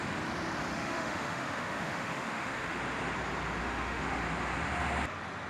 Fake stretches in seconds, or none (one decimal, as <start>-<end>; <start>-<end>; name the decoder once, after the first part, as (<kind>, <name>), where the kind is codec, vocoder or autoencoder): 0.7-2.8 (autoencoder, DAC-VAE); 3.6-4.2